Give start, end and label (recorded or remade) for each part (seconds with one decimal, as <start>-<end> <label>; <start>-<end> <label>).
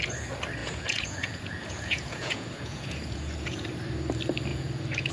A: 0.0-0.6 recorded; 0.6-3.7 remade; 3.7-4.5 recorded; 4.5-5.1 remade